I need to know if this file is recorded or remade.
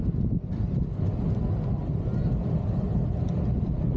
recorded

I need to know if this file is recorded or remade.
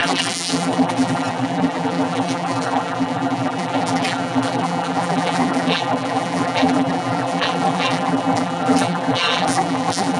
remade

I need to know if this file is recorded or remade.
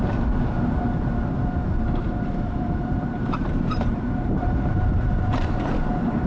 remade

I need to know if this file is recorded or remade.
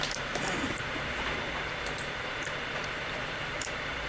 remade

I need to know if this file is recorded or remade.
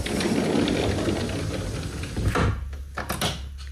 recorded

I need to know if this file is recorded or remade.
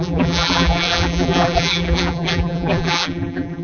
remade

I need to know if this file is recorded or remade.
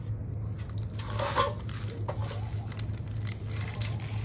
recorded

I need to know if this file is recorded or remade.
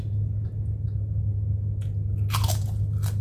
recorded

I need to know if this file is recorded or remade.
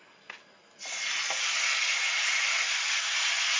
recorded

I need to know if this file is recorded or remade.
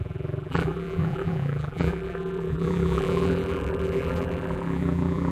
remade